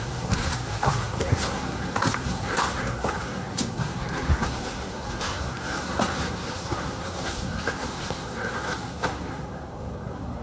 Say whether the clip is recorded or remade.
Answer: remade